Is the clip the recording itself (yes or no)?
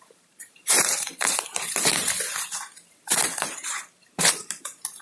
no